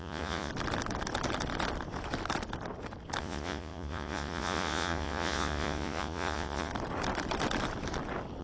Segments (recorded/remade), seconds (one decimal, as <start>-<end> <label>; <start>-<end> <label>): 0.0-0.5 remade; 0.5-3.2 recorded; 3.2-6.7 remade; 6.7-8.4 recorded